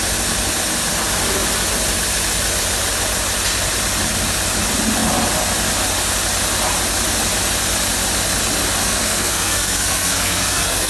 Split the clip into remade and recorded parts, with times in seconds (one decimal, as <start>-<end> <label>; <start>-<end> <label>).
0.0-8.8 recorded; 8.8-10.9 remade